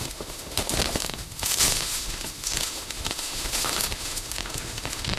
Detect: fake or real fake